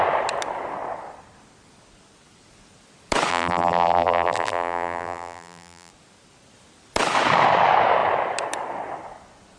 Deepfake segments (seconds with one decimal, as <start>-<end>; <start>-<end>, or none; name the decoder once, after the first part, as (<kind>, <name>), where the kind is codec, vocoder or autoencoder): 3.3-5.9 (vocoder, BigVGAN v2)